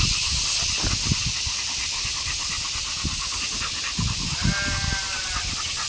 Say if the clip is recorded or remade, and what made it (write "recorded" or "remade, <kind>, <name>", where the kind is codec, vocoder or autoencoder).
recorded